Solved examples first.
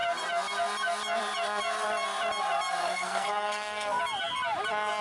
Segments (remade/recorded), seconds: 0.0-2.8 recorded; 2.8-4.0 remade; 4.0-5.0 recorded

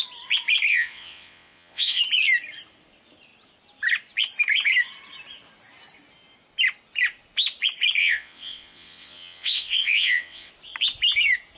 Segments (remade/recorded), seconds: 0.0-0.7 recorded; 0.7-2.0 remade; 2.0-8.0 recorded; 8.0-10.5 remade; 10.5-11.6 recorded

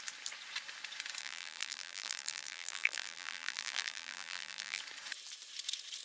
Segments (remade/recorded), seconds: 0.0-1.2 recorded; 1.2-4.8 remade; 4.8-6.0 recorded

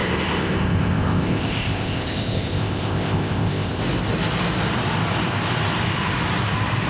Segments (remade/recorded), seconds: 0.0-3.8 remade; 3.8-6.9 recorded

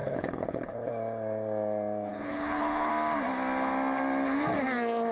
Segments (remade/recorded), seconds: 0.0-0.9 remade; 0.9-2.1 recorded; 2.1-2.9 remade; 2.9-5.1 recorded

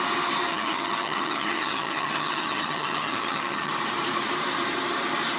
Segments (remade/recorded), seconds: 0.0-0.5 recorded; 0.5-3.7 remade; 3.7-5.4 recorded

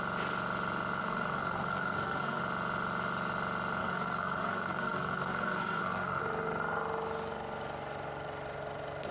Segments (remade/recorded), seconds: 0.0-1.0 recorded; 1.0-2.4 remade; 2.4-3.8 recorded; 3.8-6.2 remade; 6.2-9.1 recorded